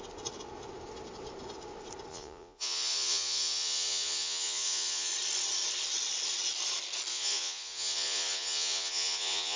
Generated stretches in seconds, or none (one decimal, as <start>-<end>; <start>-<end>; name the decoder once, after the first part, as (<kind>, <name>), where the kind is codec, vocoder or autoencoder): 2.1-5.1 (vocoder, Vocos); 7.1-9.6